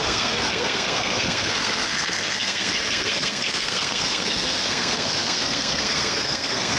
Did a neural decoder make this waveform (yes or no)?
yes